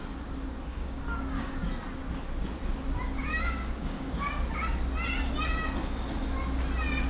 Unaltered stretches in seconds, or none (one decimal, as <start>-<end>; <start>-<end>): 0.0-0.7; 1.6-3.2; 4.5-7.1